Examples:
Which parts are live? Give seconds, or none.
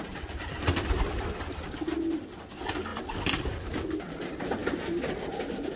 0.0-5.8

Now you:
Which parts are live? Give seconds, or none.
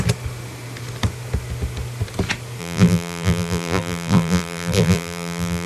0.0-2.6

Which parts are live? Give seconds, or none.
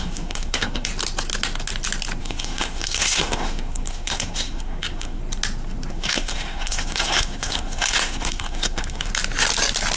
0.9-2.2; 5.2-5.9; 9.1-10.0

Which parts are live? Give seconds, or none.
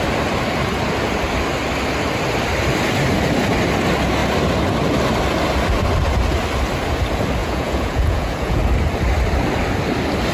0.0-7.4; 8.6-10.3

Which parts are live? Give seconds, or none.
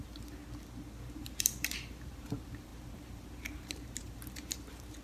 0.4-1.0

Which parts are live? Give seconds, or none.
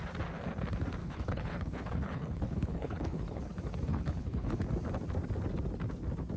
0.0-1.0; 3.4-3.9; 4.5-6.4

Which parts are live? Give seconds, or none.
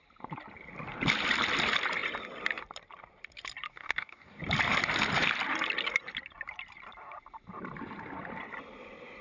0.0-3.7; 4.4-9.2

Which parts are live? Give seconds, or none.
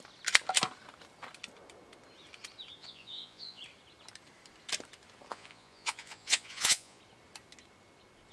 0.0-2.8; 3.6-5.3; 7.0-8.3